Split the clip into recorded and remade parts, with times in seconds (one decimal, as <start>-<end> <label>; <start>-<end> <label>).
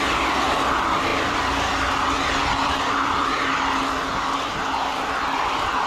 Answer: 0.0-5.9 recorded